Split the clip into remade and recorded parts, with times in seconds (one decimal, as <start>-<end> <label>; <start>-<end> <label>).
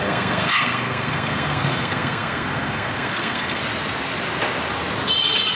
0.0-3.6 remade; 3.6-5.5 recorded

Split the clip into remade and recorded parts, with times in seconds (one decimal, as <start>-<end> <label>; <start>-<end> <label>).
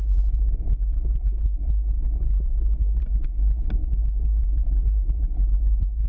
0.0-3.8 recorded; 3.8-4.4 remade; 4.4-6.1 recorded